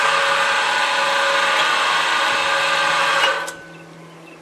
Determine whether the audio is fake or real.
real